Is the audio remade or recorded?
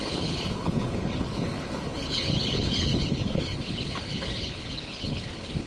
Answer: remade